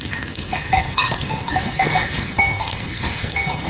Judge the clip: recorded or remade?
remade